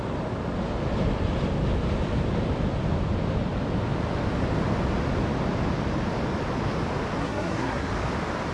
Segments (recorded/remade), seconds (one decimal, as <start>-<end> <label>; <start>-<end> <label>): 0.0-7.2 recorded; 7.2-7.9 remade; 7.9-8.5 recorded